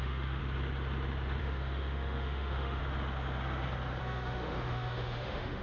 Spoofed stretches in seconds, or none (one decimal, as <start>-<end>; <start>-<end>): 0.0-0.4; 1.4-2.8; 4.0-5.6